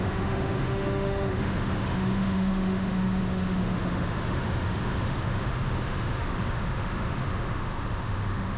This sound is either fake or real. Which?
fake